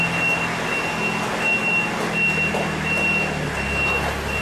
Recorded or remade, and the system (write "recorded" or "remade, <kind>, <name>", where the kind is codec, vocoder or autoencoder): recorded